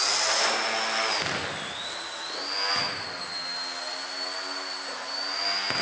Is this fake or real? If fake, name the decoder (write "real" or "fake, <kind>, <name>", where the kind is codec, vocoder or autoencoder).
real